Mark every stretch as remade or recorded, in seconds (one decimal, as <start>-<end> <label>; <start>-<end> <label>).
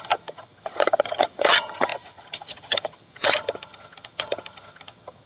0.0-5.3 remade